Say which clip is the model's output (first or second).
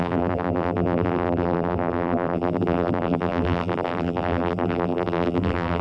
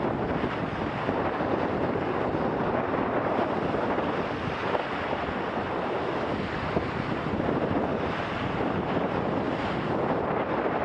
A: first